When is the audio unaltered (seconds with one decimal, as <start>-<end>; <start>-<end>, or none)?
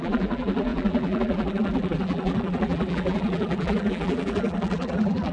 none